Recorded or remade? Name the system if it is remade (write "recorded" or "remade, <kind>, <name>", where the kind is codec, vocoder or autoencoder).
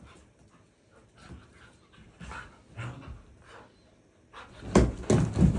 recorded